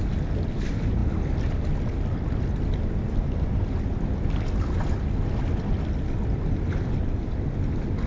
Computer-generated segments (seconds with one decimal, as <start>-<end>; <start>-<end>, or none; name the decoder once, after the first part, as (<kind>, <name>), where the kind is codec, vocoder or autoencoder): none